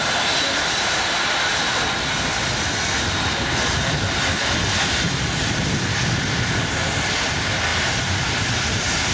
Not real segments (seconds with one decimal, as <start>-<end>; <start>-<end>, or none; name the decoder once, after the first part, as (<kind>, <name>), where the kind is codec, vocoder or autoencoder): none